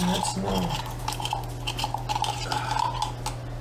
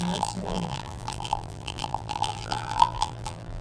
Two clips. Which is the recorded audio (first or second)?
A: first